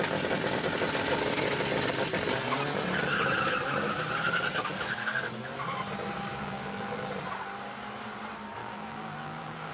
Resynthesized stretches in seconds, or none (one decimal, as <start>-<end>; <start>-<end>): 6.4-7.1; 8.6-9.7